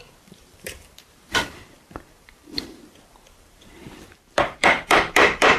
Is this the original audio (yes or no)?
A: no